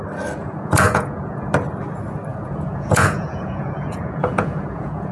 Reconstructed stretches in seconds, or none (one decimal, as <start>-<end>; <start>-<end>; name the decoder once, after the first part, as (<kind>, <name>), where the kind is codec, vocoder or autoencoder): 0.4-1.5 (vocoder, Vocos); 2.3-5.1